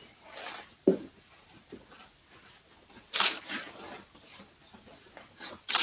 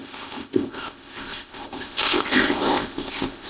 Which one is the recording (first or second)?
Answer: first